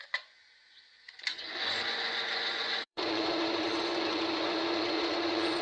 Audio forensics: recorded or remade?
remade